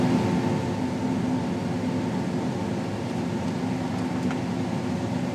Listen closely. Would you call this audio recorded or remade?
recorded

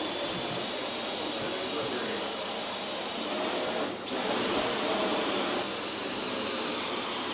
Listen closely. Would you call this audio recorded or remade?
remade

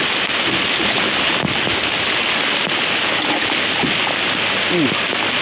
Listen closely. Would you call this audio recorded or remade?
recorded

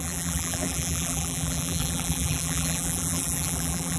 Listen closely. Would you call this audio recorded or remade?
remade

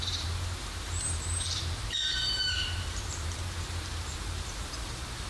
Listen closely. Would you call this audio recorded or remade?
remade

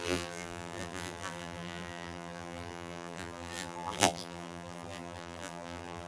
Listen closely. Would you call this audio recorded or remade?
remade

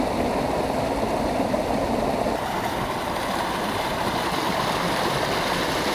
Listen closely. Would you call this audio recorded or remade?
recorded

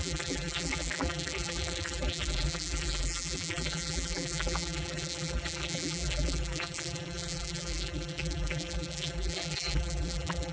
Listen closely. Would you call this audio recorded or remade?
remade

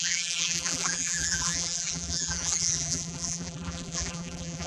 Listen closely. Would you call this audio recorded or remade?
remade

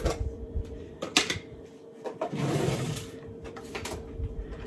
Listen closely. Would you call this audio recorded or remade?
remade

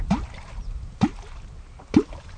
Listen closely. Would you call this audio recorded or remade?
recorded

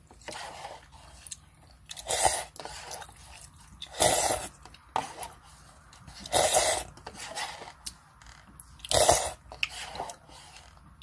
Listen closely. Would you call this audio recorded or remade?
recorded